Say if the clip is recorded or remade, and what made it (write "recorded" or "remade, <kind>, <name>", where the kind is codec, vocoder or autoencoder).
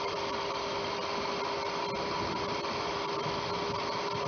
recorded